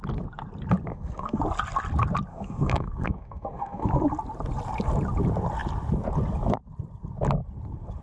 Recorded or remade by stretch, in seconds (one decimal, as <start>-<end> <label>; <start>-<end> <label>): 0.0-0.9 recorded; 0.9-1.4 remade; 1.4-2.3 recorded; 2.3-3.9 remade; 3.9-8.0 recorded